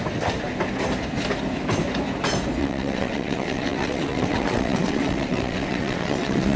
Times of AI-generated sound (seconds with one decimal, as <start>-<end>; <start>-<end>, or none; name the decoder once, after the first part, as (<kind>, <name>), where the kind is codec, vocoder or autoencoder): 2.6-6.6 (vocoder, WaveNeXt)